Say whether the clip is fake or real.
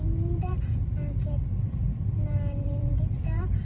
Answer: fake